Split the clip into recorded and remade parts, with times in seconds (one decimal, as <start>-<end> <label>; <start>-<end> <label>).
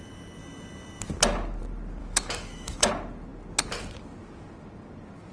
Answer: 0.0-2.0 recorded; 2.0-2.9 remade; 2.9-5.3 recorded